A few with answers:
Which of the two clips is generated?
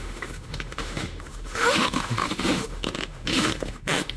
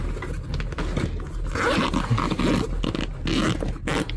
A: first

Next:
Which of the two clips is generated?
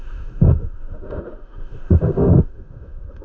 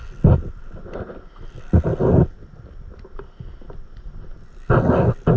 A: first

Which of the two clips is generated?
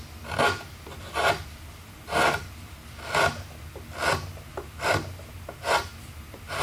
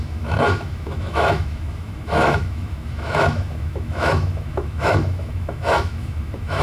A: second